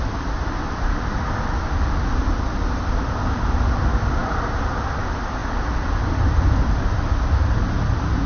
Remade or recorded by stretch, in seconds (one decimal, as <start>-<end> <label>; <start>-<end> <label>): 0.0-8.3 recorded